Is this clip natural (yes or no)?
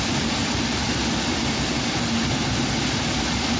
yes